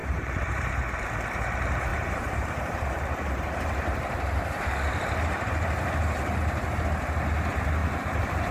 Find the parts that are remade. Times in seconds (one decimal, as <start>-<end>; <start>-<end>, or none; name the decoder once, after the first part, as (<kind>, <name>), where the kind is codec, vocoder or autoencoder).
0.0-0.7 (vocoder, BigVGAN v2); 1.9-6.2; 7.8-8.5